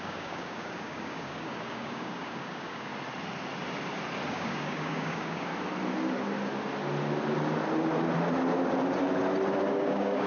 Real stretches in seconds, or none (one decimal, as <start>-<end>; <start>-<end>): 2.9-4.3; 5.5-9.7